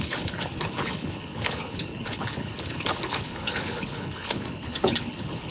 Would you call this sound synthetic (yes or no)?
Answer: yes